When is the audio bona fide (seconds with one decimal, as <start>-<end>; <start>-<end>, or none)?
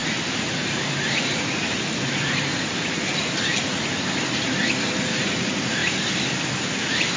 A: 0.0-7.2